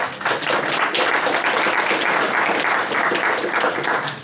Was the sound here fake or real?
real